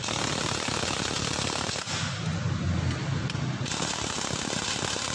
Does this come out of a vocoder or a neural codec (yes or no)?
no